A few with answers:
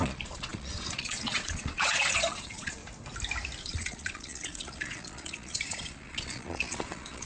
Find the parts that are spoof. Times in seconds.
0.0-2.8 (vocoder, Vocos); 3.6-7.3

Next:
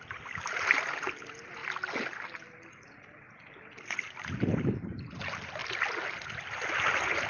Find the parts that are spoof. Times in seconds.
none

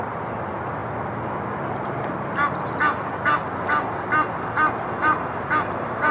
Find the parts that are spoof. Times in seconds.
none

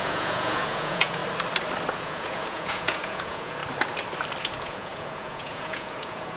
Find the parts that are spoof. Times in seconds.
0.0-1.2 (vocoder, Vocos); 1.9-3.6; 4.4-6.4

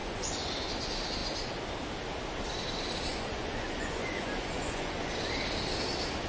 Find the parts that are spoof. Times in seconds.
0.0-0.5 (vocoder, Vocos); 3.1-5.1